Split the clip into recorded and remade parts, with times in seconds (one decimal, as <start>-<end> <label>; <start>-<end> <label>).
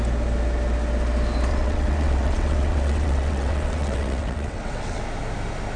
0.0-1.5 recorded; 1.5-5.0 remade; 5.0-5.8 recorded